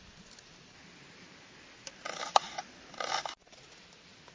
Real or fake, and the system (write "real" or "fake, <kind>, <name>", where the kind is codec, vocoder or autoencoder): real